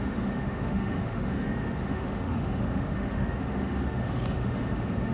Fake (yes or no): yes